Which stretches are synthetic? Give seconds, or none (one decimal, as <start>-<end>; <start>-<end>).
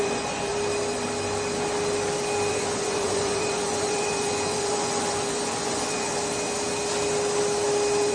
0.0-0.5; 2.5-6.1